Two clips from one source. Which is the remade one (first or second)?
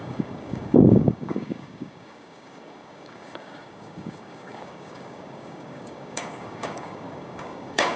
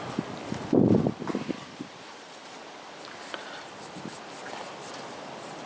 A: first